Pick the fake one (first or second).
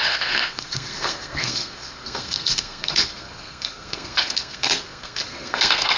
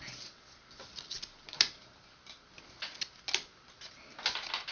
first